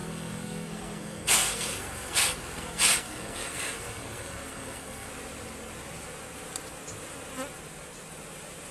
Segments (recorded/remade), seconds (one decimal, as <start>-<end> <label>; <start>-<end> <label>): 0.0-5.1 remade; 5.1-8.7 recorded